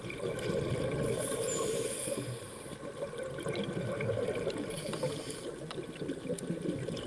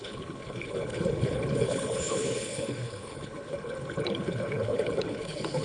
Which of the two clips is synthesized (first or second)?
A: second